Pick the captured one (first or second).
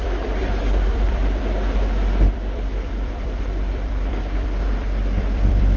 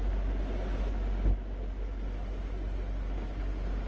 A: second